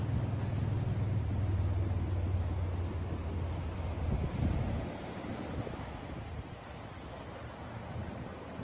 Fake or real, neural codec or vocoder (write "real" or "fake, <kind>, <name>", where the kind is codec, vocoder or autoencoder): real